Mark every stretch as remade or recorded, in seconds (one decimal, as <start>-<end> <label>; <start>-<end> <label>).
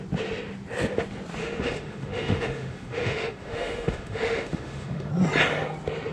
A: 0.0-1.4 recorded; 1.4-5.1 remade; 5.1-6.1 recorded